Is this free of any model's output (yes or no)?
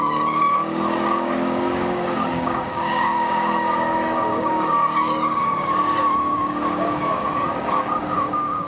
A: no